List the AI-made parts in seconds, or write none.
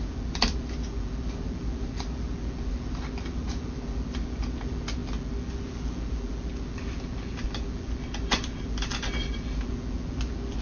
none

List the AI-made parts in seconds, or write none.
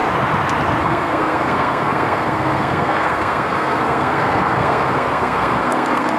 0.8-6.2 (codec, SNAC)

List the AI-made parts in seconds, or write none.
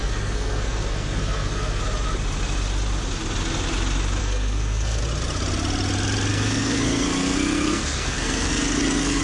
0.0-1.8 (codec, SNAC); 4.2-5.0; 6.3-9.2